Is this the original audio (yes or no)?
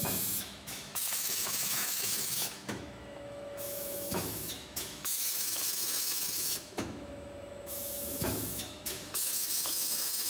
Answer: no